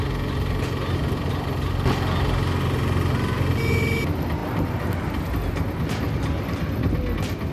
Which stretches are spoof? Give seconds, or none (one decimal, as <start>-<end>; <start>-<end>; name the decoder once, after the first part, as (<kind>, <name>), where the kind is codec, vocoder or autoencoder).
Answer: 4.4-5.3 (vocoder, BigVGAN v2)